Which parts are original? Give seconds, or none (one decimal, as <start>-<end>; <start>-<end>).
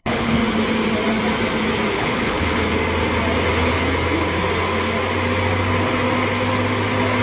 0.4-1.9; 2.6-7.2